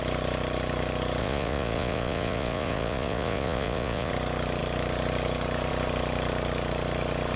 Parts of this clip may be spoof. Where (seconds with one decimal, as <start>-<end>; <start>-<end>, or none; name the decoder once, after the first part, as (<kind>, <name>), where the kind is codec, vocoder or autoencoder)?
1.2-4.1 (vocoder, Vocos)